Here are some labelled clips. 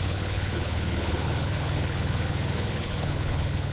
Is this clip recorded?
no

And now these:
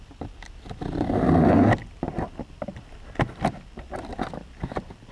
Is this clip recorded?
yes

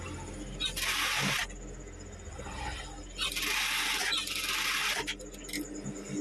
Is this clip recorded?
yes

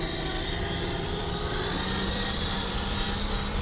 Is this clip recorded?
no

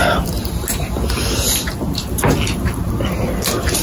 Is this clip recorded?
yes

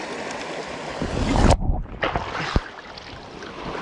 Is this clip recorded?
yes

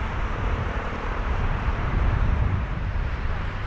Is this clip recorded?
no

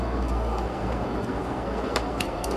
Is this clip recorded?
no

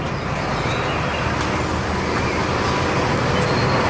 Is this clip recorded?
yes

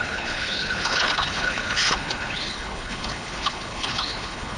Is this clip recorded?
no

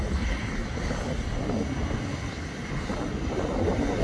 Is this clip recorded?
yes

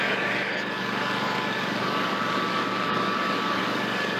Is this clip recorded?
no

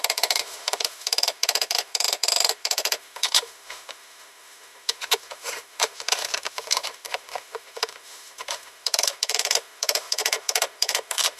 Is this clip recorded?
no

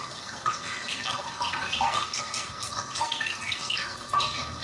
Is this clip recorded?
no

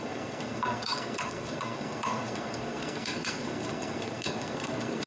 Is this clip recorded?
no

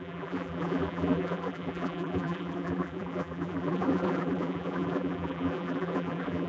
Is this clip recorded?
no